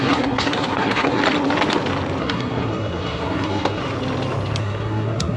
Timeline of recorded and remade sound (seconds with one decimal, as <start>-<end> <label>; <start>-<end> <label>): 0.0-1.2 remade; 1.2-2.2 recorded; 2.2-3.8 remade; 3.8-4.6 recorded; 4.6-5.4 remade